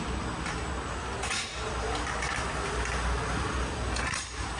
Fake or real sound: real